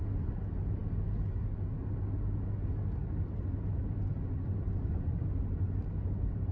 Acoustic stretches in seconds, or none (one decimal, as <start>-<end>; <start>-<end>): 0.0-3.0